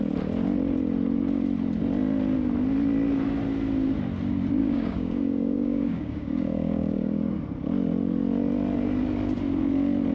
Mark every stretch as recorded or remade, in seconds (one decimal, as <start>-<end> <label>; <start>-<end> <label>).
0.0-4.6 recorded; 4.6-7.4 remade; 7.4-10.1 recorded